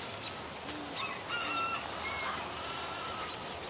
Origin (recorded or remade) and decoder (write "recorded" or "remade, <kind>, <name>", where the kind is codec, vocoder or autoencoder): recorded